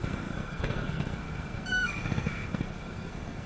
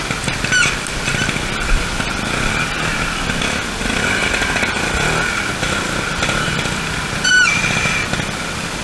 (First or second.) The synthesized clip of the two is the first